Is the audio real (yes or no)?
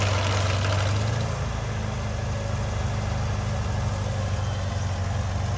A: yes